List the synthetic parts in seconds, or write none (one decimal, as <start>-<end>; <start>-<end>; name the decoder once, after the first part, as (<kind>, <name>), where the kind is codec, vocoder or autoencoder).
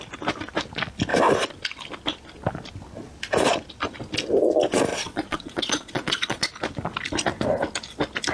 4.9-6.5 (vocoder, Vocos)